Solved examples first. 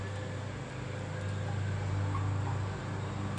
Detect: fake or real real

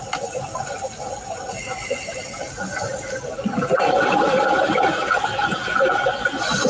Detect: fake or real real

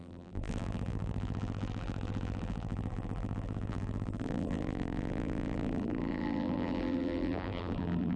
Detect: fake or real fake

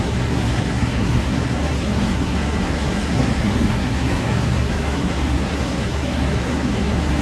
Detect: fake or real fake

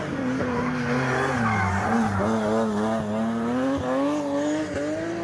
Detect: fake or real real